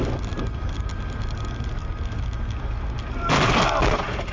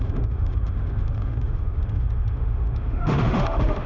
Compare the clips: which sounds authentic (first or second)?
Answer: first